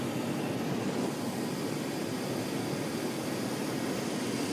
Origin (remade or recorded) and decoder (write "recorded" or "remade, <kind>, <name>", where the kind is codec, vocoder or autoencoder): recorded